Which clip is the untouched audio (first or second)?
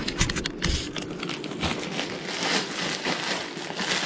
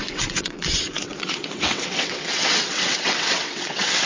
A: first